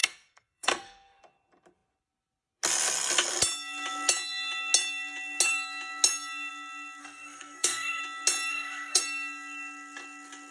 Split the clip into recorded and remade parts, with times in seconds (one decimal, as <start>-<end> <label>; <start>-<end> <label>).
0.0-1.2 remade; 1.2-7.0 recorded; 7.0-8.0 remade; 8.0-8.5 recorded; 8.5-9.0 remade; 9.0-10.5 recorded